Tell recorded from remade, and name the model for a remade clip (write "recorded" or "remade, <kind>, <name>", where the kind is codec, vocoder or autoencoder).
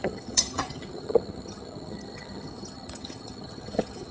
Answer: remade, vocoder, HiFi-GAN